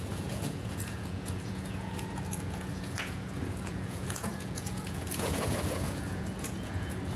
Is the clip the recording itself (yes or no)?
no